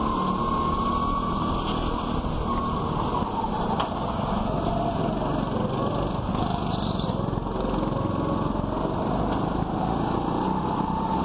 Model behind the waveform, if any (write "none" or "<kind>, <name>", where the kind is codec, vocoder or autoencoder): none